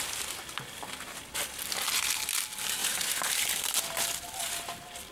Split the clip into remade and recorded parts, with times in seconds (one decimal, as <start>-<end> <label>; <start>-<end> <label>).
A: 0.0-2.8 recorded; 2.8-3.6 remade; 3.6-4.4 recorded; 4.4-5.1 remade